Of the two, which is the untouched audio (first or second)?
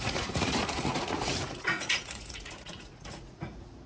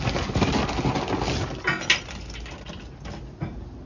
second